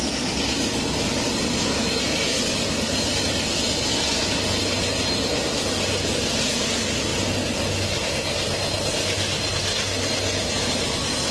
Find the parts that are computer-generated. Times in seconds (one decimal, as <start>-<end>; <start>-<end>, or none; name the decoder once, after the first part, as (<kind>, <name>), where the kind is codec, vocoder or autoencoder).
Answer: none